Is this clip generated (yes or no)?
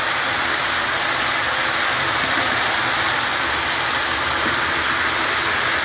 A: no